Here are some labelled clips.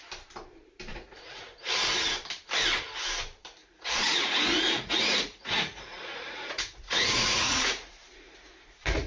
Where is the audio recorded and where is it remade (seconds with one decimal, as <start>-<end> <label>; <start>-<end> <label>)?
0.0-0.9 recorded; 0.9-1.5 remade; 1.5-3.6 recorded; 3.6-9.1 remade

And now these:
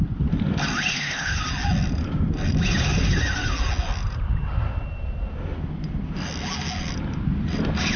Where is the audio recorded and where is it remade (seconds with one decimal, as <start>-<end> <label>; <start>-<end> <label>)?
0.0-0.9 recorded; 0.9-1.4 remade; 1.4-8.0 recorded

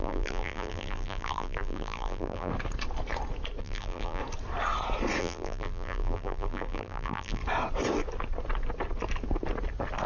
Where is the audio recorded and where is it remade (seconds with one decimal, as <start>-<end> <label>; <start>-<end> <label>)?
0.0-2.5 remade; 2.5-3.6 recorded; 3.6-4.2 remade; 4.2-5.2 recorded; 5.2-7.4 remade; 7.4-10.1 recorded